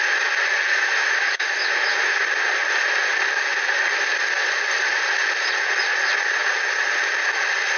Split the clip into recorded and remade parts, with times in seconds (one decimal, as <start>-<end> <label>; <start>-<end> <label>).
0.0-0.7 recorded; 0.7-2.2 remade; 2.2-7.8 recorded